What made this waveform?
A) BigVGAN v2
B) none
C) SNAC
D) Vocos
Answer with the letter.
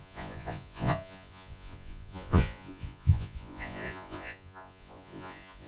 D